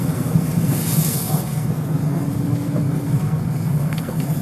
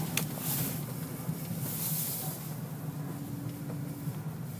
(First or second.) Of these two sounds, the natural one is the second